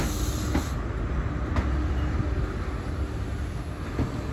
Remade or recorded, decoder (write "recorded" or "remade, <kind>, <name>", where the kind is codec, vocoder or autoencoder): recorded